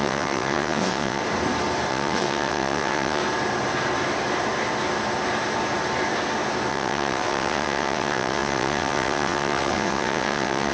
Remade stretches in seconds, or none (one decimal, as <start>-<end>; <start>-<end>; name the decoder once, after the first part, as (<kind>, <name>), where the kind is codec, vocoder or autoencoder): 0.0-1.2 (vocoder, WaveNeXt); 1.9-3.2; 6.7-10.7